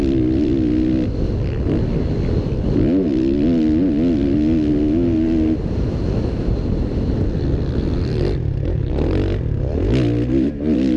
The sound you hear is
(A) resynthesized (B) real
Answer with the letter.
B